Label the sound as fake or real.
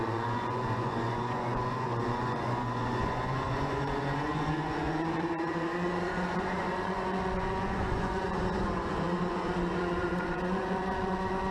fake